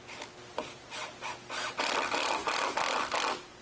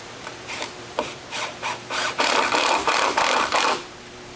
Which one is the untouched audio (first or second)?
first